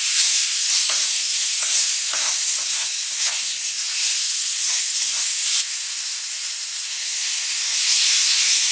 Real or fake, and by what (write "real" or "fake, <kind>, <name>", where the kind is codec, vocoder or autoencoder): fake, codec, SNAC